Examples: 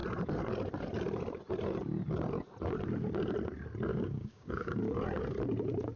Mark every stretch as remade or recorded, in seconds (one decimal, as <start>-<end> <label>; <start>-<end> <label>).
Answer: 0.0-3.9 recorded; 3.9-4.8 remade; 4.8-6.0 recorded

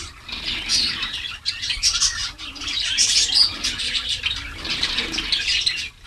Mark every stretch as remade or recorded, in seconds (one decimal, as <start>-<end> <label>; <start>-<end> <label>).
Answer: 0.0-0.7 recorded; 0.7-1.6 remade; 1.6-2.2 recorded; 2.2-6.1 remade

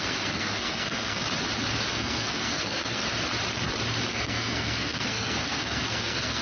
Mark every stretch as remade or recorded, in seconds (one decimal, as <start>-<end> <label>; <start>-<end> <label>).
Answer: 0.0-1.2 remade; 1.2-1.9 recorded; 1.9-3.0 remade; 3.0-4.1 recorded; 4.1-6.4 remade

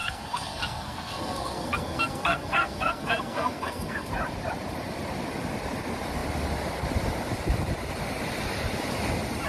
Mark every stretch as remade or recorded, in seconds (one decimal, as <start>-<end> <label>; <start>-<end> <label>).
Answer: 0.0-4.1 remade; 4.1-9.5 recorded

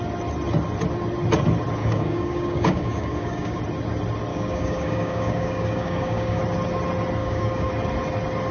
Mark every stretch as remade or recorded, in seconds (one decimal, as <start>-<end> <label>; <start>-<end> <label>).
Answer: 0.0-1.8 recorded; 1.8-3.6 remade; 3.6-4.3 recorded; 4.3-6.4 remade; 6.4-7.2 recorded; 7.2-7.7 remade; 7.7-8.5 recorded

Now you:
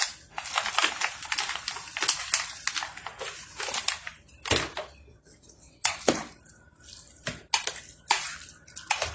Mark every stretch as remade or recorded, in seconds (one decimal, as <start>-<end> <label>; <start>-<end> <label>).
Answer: 0.0-5.1 recorded; 5.1-5.9 remade; 5.9-9.1 recorded